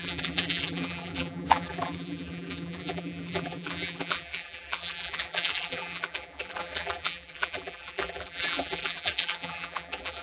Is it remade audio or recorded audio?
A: remade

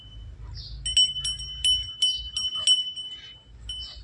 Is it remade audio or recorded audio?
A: recorded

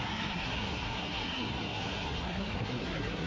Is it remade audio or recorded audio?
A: remade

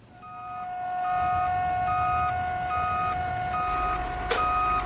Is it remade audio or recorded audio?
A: recorded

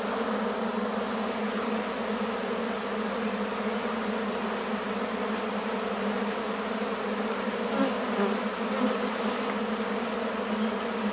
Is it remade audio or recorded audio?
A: recorded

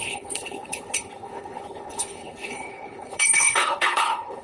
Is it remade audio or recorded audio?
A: remade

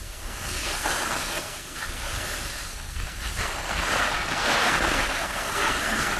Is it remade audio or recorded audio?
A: remade